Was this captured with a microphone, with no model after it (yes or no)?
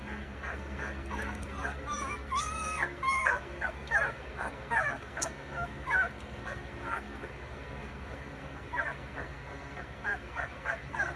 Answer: no